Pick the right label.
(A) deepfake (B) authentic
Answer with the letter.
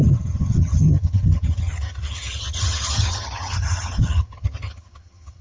A